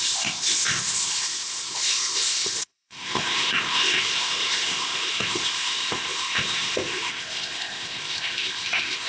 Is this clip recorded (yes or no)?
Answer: no